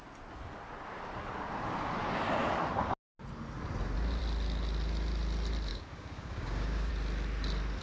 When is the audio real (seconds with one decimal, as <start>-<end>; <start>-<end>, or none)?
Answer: 0.0-5.7; 6.9-7.8